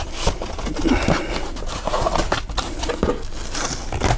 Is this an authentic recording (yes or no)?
yes